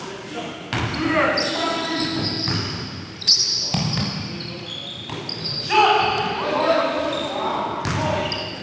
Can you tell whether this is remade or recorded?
recorded